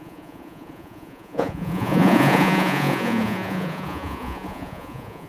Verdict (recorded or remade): remade